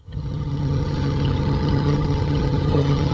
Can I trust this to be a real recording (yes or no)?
no